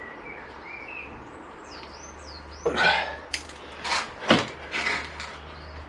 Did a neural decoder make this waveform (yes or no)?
no